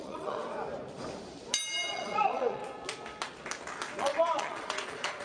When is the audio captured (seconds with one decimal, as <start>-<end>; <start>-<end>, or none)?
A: 0.4-1.9; 2.6-4.0